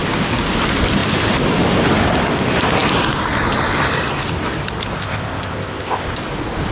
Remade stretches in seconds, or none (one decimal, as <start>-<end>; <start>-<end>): 5.0-6.1